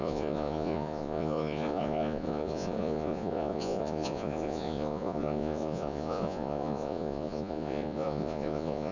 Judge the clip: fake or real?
fake